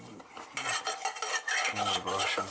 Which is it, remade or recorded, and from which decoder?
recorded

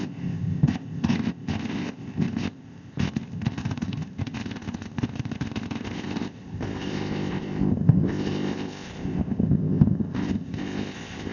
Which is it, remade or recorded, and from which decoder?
remade, codec, ZipCodec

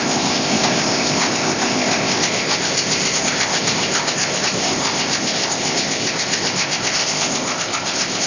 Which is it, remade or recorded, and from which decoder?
remade, codec, ZipCodec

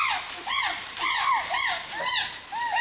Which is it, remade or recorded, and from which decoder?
recorded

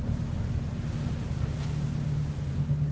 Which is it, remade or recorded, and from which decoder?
recorded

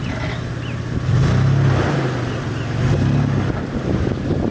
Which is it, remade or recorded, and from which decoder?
recorded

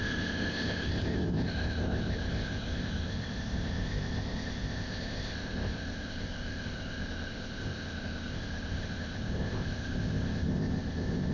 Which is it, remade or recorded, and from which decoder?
remade, codec, ZipCodec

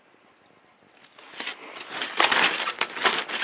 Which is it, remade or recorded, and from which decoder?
recorded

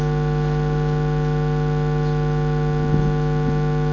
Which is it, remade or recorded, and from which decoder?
recorded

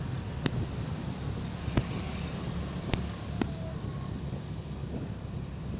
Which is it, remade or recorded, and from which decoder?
recorded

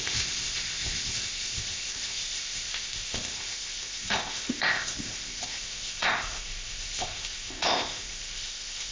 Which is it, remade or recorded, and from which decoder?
remade, codec, ZipCodec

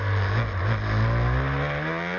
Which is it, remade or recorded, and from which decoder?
recorded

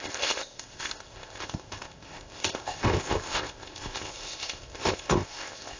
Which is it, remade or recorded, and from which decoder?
remade, codec, ZipCodec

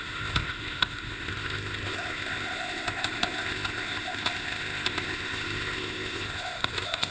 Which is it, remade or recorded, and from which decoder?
remade, codec, ZipCodec